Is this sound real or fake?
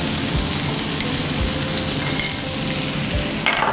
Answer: real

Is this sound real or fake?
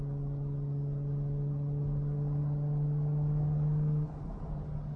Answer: real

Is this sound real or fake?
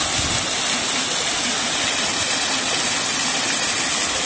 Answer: real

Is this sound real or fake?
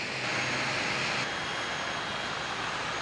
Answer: real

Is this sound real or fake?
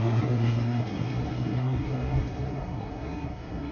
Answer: fake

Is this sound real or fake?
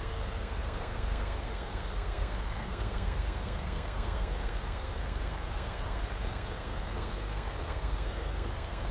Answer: fake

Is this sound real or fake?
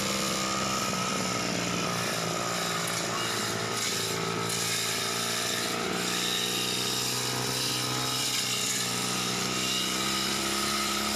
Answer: real